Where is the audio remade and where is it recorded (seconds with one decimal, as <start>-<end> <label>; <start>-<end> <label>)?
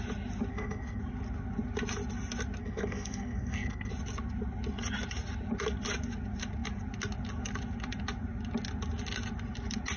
0.0-0.5 recorded; 0.5-1.0 remade; 1.0-2.6 recorded; 2.6-3.9 remade; 3.9-10.0 recorded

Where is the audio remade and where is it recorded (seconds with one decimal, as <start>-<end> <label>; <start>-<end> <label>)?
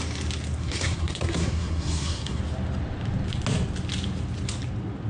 0.0-0.6 recorded; 0.6-2.4 remade; 2.4-5.1 recorded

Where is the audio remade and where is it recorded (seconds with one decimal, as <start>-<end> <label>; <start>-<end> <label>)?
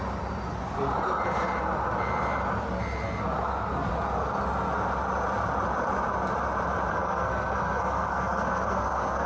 0.0-6.9 recorded; 6.9-9.3 remade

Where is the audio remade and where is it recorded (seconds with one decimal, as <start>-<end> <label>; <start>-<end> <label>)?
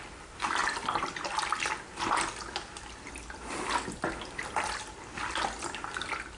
0.0-6.4 recorded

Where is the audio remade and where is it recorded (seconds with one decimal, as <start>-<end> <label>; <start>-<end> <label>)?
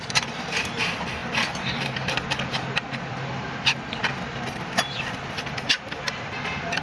0.0-6.8 recorded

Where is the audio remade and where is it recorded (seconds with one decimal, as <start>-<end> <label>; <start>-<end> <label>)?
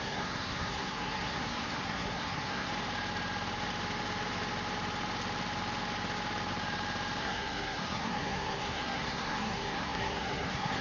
0.0-2.7 remade; 2.7-7.2 recorded; 7.2-10.8 remade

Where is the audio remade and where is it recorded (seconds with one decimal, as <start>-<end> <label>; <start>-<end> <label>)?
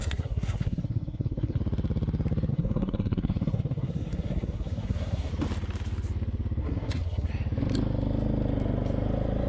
0.0-1.6 remade; 1.6-2.5 recorded; 2.5-5.3 remade; 5.3-6.6 recorded; 6.6-7.3 remade; 7.3-9.5 recorded